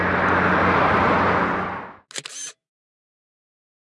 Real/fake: real